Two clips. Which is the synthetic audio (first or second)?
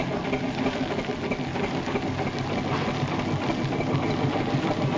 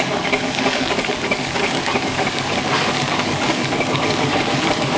second